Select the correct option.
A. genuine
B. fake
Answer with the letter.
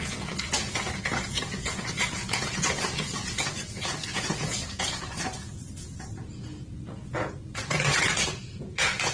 B